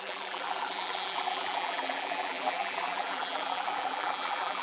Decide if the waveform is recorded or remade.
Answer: remade